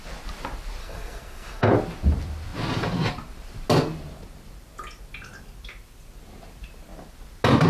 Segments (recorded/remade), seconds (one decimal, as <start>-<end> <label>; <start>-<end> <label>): 0.0-0.8 recorded; 0.8-1.7 remade; 1.7-7.7 recorded